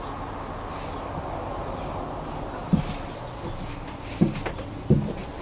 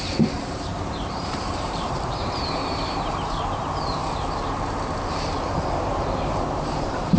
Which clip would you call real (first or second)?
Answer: first